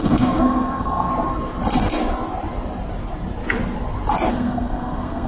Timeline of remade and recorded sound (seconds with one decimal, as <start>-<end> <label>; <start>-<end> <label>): 0.0-1.1 remade; 1.1-4.3 recorded; 4.3-5.3 remade